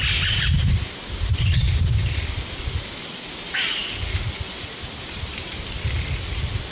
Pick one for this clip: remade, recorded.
remade